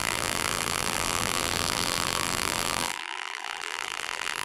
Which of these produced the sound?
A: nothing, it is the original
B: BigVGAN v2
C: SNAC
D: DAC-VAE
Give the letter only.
B